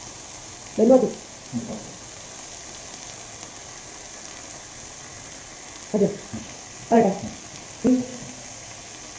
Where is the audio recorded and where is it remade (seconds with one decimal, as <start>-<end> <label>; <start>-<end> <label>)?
0.0-9.2 recorded